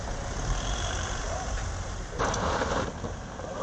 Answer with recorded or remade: remade